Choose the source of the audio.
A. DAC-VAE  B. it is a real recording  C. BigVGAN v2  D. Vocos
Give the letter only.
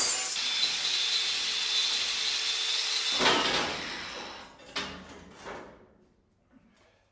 B